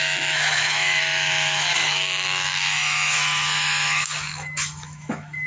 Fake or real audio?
fake